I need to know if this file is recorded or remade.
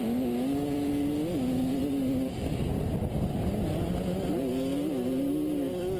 recorded